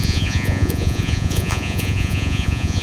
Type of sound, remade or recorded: remade